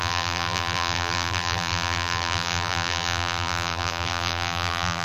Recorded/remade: remade